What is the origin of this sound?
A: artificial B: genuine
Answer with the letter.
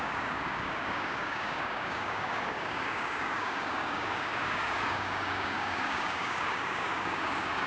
A